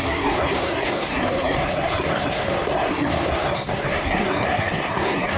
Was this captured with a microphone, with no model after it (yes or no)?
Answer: no